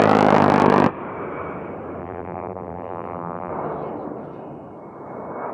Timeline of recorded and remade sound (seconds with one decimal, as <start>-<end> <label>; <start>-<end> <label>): 0.0-2.0 recorded; 2.0-3.5 remade; 3.5-5.5 recorded

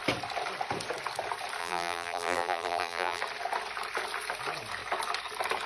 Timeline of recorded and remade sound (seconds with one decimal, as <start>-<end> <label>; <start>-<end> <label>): 0.0-1.6 recorded; 1.6-3.2 remade; 3.2-5.7 recorded

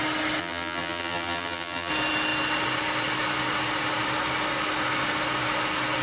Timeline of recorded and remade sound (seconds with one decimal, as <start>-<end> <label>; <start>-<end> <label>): 0.0-0.4 recorded; 0.4-1.9 remade; 1.9-6.0 recorded

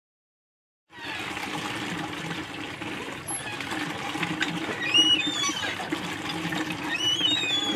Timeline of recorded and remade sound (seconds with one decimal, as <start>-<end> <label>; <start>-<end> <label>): 0.0-3.5 recorded; 3.5-7.2 remade; 7.2-7.8 recorded

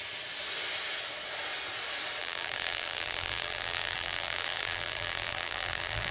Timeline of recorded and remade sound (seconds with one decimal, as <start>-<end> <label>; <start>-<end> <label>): 0.0-2.2 recorded; 2.2-6.1 remade

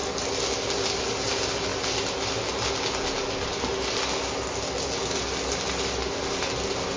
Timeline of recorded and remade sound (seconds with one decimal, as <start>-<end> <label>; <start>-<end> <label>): 0.0-7.0 recorded

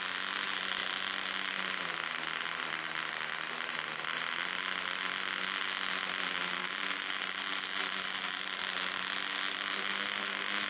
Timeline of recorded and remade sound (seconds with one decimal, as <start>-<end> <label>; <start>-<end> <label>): 0.0-6.6 recorded; 6.6-8.6 remade; 8.6-10.7 recorded